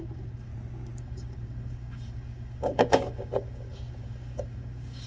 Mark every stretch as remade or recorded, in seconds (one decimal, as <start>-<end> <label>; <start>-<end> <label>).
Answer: 0.0-0.5 remade; 0.5-1.0 recorded; 1.0-5.1 remade